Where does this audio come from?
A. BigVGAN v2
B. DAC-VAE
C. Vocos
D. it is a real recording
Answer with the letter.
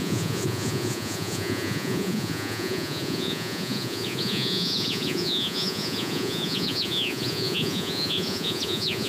C